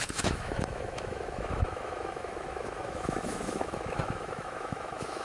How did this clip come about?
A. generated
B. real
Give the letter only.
A